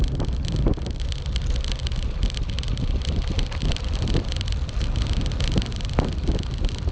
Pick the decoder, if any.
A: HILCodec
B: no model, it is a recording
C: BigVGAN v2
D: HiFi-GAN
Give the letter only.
B